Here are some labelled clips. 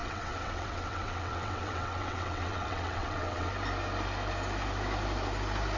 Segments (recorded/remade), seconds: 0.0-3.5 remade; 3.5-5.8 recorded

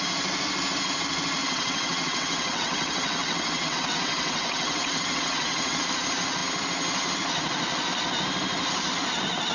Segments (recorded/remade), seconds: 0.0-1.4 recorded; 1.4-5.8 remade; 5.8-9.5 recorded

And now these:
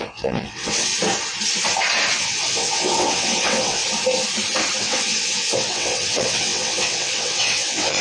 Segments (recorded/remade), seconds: 0.0-0.9 remade; 0.9-2.2 recorded; 2.2-3.8 remade; 3.8-4.8 recorded; 4.8-8.0 remade